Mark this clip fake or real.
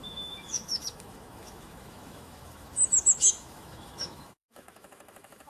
fake